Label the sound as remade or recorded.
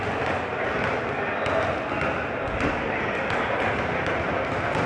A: recorded